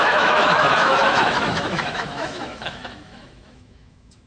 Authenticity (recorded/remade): remade